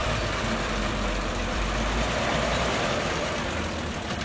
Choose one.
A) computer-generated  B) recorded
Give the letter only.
A